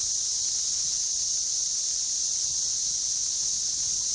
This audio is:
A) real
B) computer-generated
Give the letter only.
A